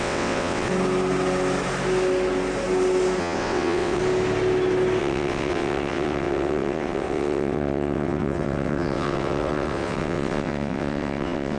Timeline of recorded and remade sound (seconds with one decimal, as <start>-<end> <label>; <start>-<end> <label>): 0.0-0.7 remade; 0.7-3.2 recorded; 3.2-4.0 remade; 4.0-5.0 recorded; 5.0-11.6 remade